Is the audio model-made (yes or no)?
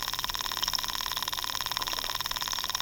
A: no